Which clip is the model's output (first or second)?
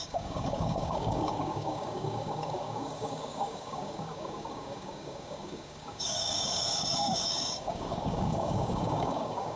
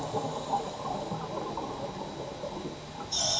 first